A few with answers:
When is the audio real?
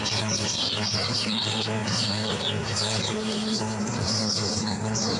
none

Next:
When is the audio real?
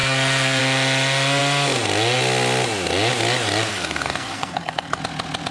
0.6-3.7; 5.0-5.5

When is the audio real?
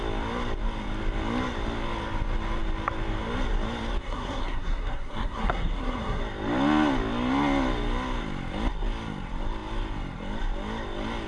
0.0-4.0; 6.2-11.3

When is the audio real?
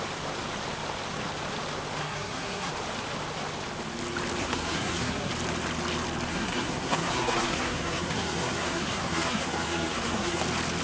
0.0-2.0; 2.7-4.4; 5.3-6.3; 10.4-10.8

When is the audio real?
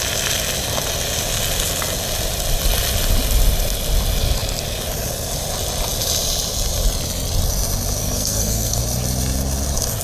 0.0-8.0; 8.8-10.0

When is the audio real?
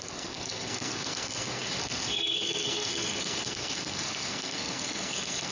none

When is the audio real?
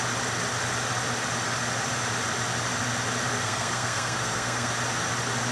0.0-3.4; 4.7-5.5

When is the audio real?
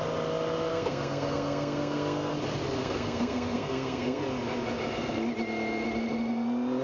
0.0-0.7; 2.3-2.8; 4.2-6.8